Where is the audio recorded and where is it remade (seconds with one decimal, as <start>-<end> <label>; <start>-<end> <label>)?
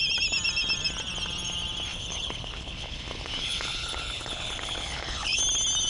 0.0-1.9 recorded; 1.9-5.4 remade; 5.4-5.9 recorded